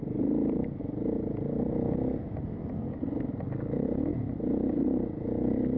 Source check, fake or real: real